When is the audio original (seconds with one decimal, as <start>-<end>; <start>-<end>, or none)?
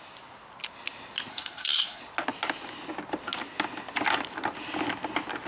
0.0-1.3; 2.0-5.5